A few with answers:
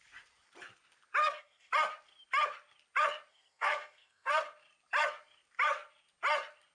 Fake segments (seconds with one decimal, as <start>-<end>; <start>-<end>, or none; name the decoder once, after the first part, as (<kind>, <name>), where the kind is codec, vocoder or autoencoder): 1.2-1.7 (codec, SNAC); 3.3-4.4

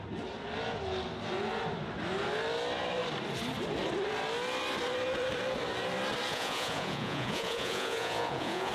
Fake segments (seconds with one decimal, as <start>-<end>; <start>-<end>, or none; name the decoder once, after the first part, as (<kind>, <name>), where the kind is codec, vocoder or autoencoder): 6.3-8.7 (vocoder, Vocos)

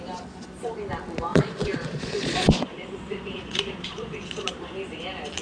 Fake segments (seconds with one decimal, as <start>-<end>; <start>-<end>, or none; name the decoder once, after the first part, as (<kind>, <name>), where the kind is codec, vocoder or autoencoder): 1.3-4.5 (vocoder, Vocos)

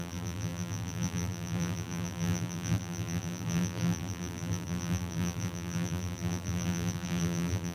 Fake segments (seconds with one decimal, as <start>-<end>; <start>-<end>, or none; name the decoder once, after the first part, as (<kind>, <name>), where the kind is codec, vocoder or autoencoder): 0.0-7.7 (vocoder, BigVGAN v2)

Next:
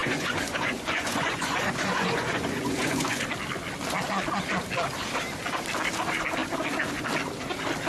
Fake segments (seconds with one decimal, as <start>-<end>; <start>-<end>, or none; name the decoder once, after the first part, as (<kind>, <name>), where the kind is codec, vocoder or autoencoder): 0.0-3.2 (vocoder, Vocos)